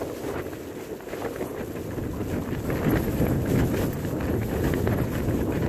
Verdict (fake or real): real